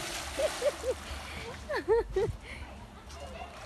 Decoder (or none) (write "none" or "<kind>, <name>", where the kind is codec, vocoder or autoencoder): none